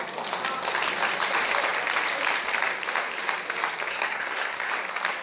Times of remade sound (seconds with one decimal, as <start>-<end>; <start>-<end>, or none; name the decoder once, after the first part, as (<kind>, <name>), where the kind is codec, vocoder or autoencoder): 3.9-4.7 (codec, SNAC)